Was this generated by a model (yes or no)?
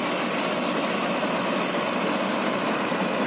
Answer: no